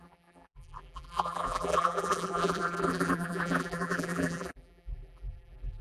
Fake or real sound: fake